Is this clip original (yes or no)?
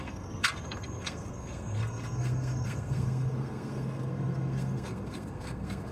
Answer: no